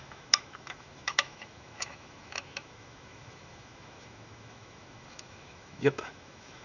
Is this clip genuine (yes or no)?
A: no